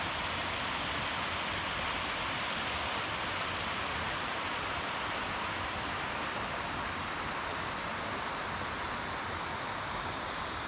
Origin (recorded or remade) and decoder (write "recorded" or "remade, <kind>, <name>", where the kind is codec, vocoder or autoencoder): recorded